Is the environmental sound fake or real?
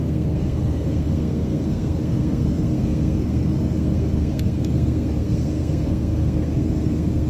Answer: fake